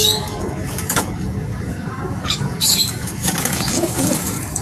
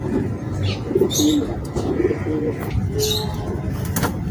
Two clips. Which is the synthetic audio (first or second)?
first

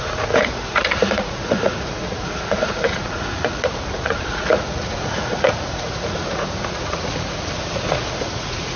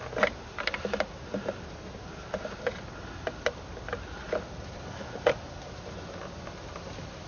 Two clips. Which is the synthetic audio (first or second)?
first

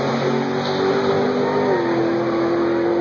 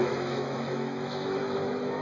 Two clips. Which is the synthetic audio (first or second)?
second